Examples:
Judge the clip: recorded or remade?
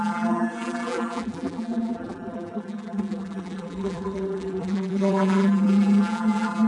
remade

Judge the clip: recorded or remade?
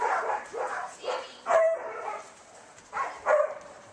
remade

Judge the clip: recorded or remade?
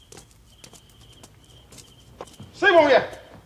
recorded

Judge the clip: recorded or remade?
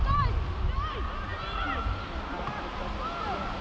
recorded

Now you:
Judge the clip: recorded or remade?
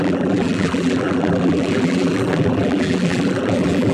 remade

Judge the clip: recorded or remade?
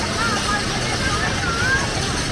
recorded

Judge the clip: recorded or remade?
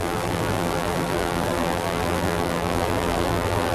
remade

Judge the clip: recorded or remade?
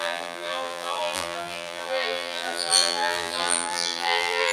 remade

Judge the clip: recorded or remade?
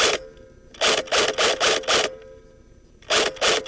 recorded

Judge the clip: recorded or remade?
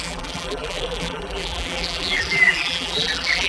remade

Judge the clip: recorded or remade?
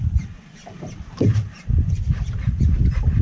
remade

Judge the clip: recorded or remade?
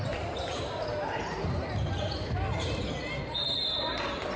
remade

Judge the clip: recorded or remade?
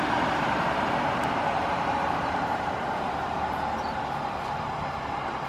remade